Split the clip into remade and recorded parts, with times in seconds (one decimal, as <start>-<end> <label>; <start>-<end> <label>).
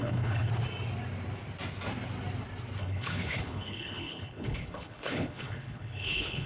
0.0-0.5 remade; 0.5-2.8 recorded; 2.8-6.5 remade